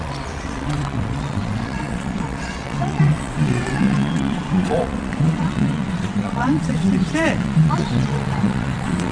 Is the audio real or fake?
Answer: fake